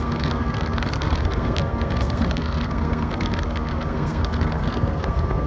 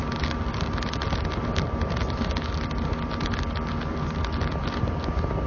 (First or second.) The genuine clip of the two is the second